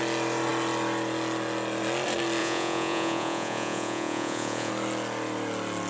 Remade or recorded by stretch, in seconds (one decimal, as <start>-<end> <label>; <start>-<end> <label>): 0.0-2.4 recorded; 2.4-4.7 remade; 4.7-5.9 recorded